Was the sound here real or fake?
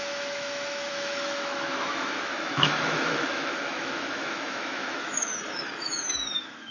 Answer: fake